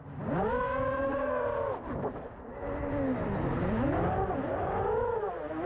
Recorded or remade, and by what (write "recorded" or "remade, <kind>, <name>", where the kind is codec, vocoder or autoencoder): recorded